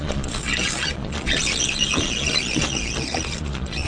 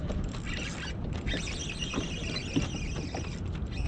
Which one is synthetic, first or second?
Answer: first